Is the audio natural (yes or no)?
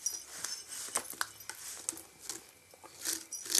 yes